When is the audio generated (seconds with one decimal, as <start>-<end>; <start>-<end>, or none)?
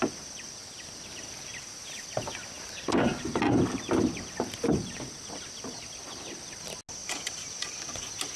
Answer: 7.0-7.8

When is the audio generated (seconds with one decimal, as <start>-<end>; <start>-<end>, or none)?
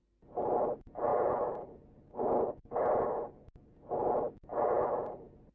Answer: none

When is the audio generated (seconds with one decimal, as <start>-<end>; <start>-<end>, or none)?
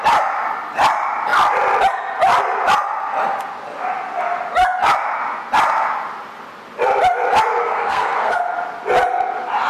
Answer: 7.6-8.4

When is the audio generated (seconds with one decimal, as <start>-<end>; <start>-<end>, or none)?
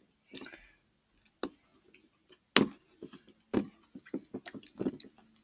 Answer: none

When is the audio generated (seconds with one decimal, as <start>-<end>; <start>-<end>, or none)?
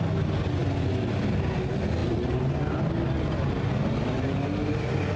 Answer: none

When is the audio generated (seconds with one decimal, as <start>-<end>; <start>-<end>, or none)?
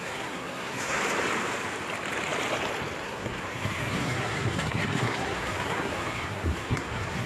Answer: 0.0-1.0; 3.0-7.3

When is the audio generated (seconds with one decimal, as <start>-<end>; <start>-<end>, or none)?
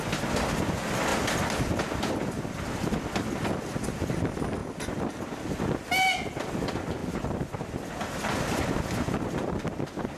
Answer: 1.1-4.1